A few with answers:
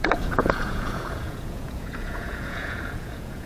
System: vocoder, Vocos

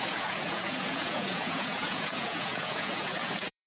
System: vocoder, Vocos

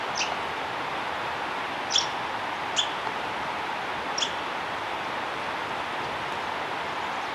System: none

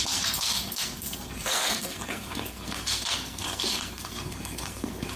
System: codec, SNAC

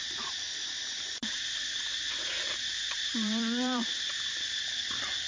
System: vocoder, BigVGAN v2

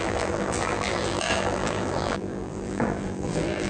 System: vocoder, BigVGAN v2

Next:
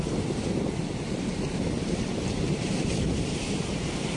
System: vocoder, BigVGAN v2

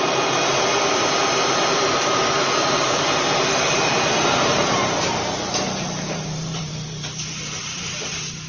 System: vocoder, BigVGAN v2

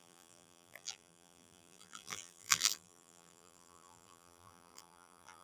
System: vocoder, BigVGAN v2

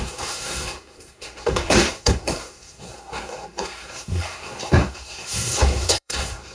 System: codec, SNAC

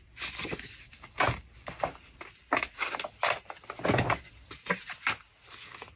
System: none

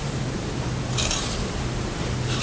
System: none